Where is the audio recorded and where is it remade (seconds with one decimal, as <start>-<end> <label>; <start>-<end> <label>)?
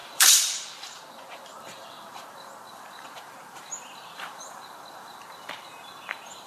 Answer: 0.0-6.5 remade